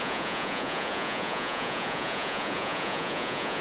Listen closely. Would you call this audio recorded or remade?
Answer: remade